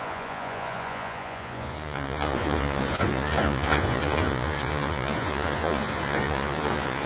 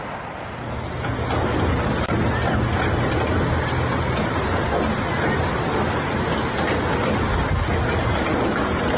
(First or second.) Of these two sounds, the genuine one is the second